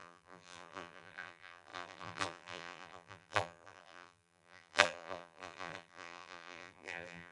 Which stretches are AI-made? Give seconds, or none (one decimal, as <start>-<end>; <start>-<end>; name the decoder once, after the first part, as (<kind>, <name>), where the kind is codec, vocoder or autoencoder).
0.0-7.3 (vocoder, BigVGAN v2)